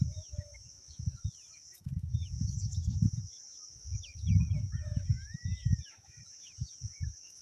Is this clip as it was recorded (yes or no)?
no